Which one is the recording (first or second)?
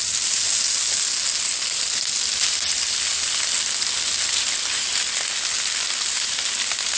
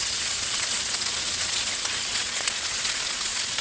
first